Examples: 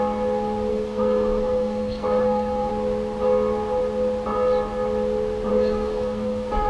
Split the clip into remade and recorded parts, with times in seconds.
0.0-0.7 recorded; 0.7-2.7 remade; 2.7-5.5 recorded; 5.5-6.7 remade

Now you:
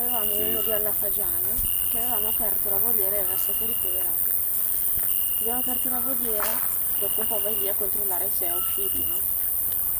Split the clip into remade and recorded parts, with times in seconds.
0.0-10.0 recorded

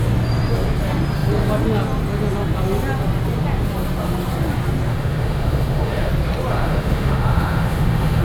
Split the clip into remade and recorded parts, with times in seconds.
0.0-4.9 recorded; 4.9-6.1 remade; 6.1-6.5 recorded; 6.5-8.2 remade

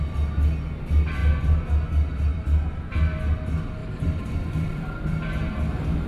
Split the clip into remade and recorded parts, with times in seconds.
0.0-1.2 recorded; 1.2-1.7 remade; 1.7-2.3 recorded; 2.3-2.9 remade; 2.9-3.8 recorded; 3.8-6.1 remade

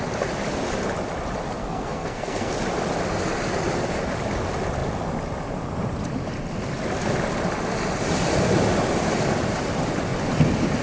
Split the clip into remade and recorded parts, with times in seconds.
0.0-1.6 recorded; 1.6-2.5 remade; 2.5-10.8 recorded

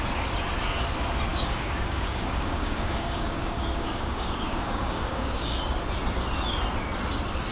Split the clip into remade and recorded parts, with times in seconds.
0.0-1.3 recorded; 1.3-5.6 remade; 5.6-7.5 recorded